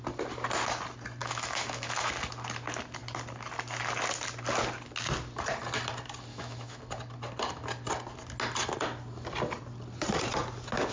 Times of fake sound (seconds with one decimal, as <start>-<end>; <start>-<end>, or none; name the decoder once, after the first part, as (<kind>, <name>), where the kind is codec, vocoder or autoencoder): 1.2-2.1 (autoencoder, DAC-VAE); 6.3-6.8

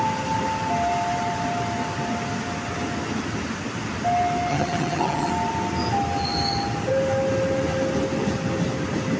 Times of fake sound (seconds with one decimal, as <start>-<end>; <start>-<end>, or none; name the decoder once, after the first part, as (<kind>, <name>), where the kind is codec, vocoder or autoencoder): 4.5-5.3 (vocoder, HiFi-GAN)

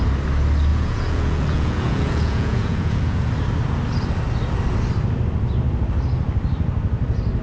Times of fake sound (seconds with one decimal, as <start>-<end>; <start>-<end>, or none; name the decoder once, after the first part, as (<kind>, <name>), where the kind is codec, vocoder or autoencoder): 0.7-3.3 (vocoder, Vocos)

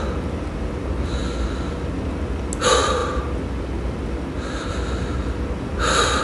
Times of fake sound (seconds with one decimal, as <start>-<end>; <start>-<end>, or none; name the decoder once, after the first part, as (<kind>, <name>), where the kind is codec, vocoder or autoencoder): none

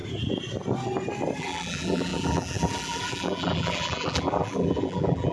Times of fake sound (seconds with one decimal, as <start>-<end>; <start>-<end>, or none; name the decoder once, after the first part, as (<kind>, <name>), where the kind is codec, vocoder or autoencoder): 1.4-5.3 (vocoder, BigVGAN v2)

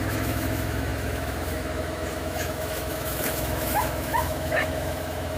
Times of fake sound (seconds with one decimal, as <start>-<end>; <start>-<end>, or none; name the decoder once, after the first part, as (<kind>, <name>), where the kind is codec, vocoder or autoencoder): 0.0-5.4 (autoencoder, DAC-VAE)

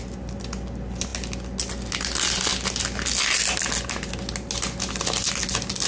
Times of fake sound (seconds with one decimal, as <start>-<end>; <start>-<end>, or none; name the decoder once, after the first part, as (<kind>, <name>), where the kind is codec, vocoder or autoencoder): none